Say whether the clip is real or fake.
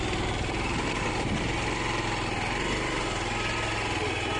real